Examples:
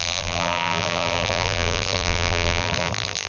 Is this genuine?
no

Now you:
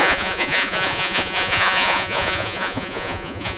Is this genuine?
no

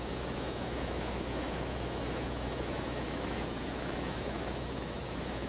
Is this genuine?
no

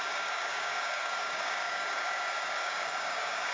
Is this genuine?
no